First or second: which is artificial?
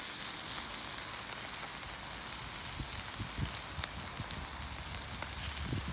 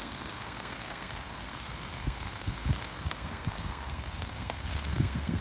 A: second